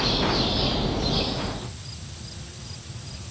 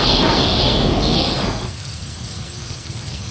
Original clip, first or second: first